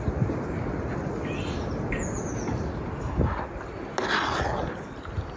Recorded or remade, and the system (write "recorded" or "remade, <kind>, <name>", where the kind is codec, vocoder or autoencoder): recorded